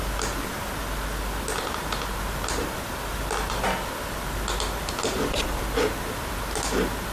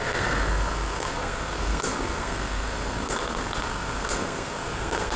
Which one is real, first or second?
first